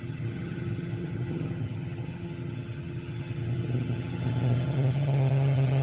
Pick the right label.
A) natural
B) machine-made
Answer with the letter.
B